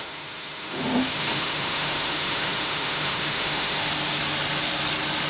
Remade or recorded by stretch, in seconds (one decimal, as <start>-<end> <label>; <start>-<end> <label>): 0.0-3.8 remade; 3.8-5.3 recorded